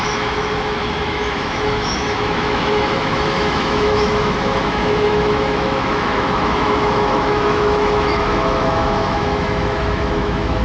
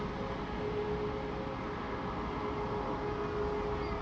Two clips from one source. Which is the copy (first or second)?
first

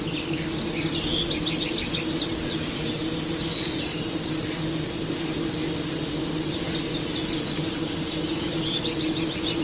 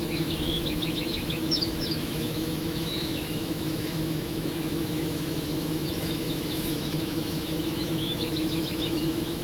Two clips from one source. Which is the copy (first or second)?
second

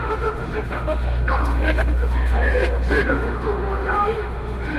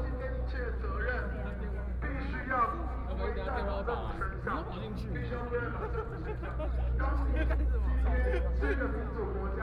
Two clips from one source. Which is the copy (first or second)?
first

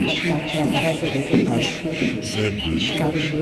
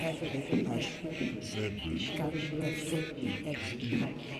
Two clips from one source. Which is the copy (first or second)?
first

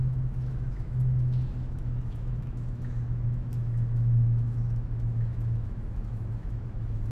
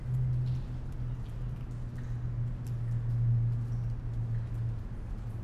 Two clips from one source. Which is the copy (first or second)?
first